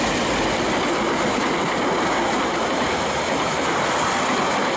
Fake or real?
real